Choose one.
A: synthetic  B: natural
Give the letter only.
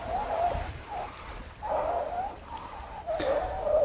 B